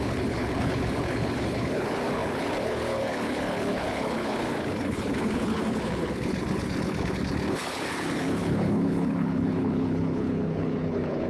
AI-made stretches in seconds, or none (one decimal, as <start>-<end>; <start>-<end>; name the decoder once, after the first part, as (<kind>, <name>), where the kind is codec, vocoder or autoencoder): 0.0-11.3 (codec, HILCodec)